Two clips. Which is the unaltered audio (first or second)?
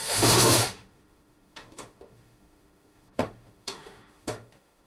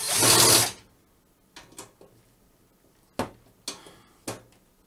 second